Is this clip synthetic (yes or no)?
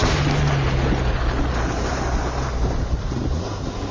no